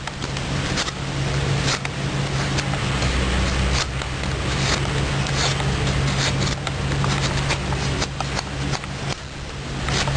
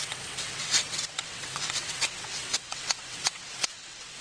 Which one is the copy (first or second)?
second